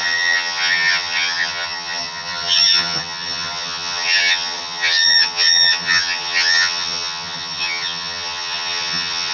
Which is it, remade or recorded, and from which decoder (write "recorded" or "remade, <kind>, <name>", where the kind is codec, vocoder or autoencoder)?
remade, vocoder, HiFi-GAN